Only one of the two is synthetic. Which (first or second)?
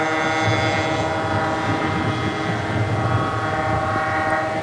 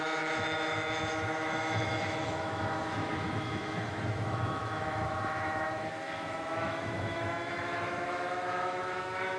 second